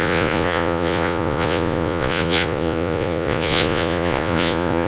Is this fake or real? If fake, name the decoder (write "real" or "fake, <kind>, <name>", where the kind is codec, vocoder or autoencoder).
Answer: fake, vocoder, Vocos